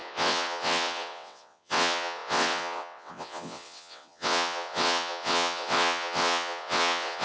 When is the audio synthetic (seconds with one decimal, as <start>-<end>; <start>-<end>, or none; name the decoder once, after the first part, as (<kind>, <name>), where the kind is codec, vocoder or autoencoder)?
0.0-7.2 (vocoder, WaveNeXt)